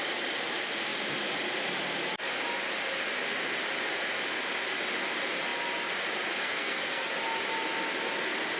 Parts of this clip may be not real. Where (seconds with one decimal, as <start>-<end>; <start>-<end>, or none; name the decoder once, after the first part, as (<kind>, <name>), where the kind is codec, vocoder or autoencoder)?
6.4-7.1 (codec, SNAC)